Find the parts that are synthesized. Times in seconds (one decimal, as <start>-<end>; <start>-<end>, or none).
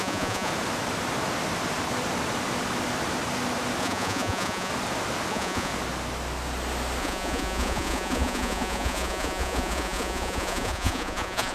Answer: 0.0-0.5; 3.8-4.7; 5.3-5.7; 7.0-11.5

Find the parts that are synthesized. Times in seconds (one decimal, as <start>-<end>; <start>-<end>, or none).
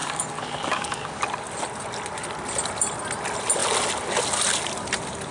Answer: 0.0-1.2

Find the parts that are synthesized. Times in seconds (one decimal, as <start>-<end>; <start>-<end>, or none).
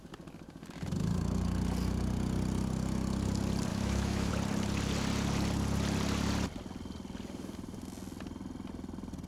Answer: 3.7-4.3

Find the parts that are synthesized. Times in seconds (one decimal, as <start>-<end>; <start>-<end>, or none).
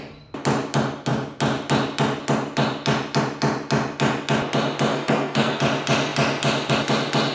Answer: 4.9-5.6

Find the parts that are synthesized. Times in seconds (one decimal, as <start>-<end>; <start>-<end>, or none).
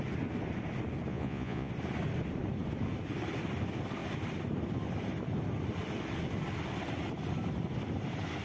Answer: 1.1-1.7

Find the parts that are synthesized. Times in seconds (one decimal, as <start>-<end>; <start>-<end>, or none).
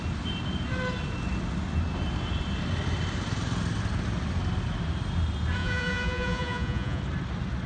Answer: 5.6-7.0